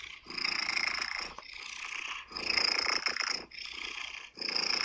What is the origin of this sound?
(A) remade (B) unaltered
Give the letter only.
B